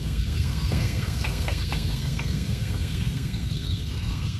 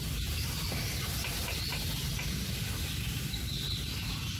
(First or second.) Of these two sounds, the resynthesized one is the first